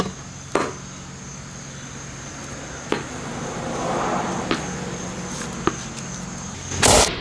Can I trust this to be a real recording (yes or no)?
yes